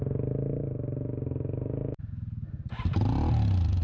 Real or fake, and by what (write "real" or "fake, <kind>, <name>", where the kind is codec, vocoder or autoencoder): real